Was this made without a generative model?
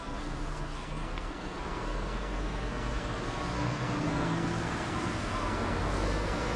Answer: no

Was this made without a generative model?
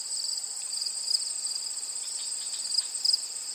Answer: yes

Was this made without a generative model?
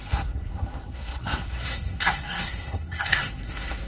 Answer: no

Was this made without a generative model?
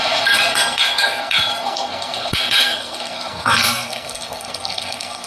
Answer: no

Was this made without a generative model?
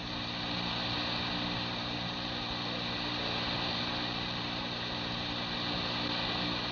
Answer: yes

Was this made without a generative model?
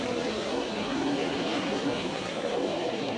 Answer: no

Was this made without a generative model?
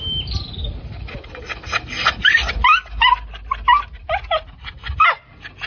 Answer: yes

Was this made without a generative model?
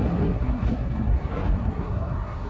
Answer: no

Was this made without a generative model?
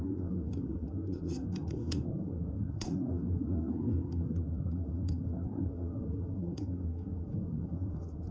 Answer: no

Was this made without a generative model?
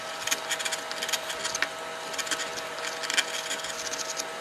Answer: yes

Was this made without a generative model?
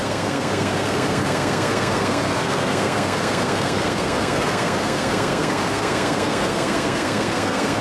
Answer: no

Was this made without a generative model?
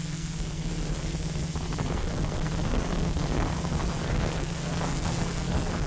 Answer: no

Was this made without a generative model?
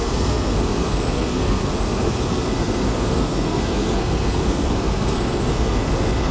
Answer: no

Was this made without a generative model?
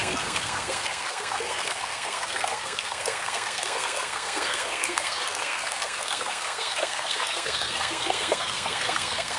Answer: no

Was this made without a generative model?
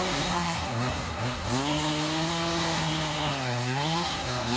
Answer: no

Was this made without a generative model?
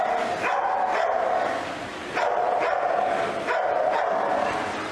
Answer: yes